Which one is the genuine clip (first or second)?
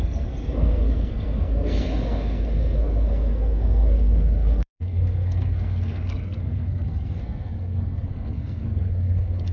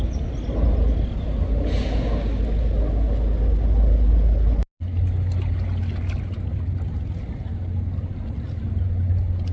second